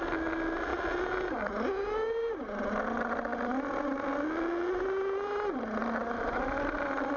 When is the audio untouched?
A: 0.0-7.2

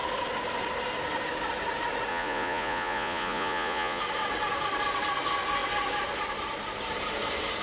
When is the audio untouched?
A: 0.0-2.1; 4.0-7.6

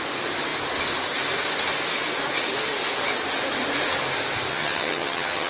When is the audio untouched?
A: 0.0-4.5

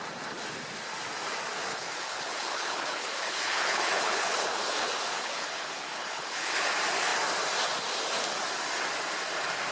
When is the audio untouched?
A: 0.0-1.7; 6.6-9.7

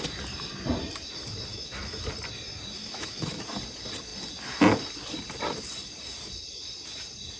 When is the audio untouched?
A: 0.0-1.5; 2.1-2.8; 3.4-7.4